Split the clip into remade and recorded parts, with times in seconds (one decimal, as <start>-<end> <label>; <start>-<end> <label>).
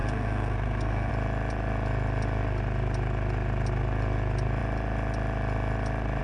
0.0-1.1 remade; 1.1-6.2 recorded